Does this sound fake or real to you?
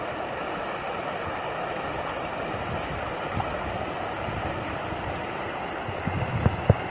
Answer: real